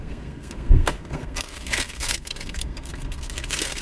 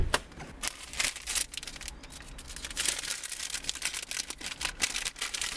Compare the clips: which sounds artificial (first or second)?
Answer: first